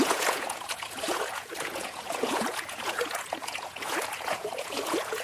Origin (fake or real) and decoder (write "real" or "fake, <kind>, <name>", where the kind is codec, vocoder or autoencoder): fake, vocoder, Vocos